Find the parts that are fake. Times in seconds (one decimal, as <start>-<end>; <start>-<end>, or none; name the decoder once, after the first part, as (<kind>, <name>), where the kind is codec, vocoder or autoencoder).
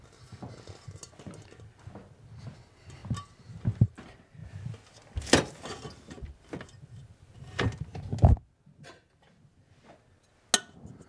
none